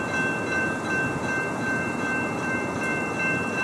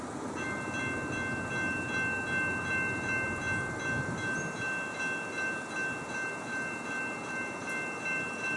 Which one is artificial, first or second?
first